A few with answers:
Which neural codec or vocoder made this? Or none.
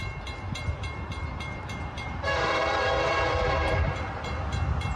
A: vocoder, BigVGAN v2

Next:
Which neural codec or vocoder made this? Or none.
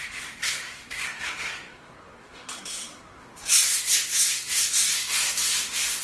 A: codec, SNAC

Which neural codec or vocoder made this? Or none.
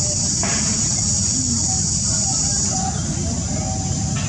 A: none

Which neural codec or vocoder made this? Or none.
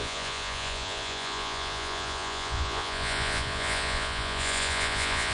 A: vocoder, Vocos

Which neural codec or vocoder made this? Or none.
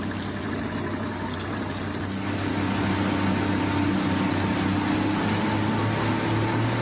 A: none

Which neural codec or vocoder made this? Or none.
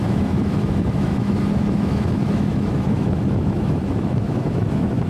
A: autoencoder, DAC-VAE